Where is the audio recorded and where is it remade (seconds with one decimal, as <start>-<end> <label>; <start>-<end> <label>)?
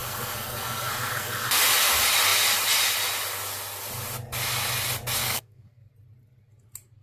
0.0-1.6 remade; 1.6-5.2 recorded; 5.2-5.9 remade; 5.9-7.0 recorded